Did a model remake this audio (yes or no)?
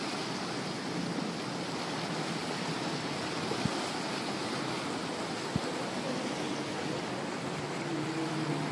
no